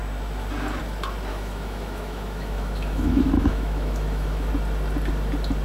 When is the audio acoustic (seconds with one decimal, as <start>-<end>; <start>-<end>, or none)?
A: 0.0-1.3; 4.5-5.6